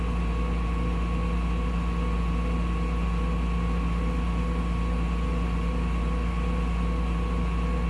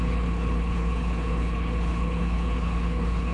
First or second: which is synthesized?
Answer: second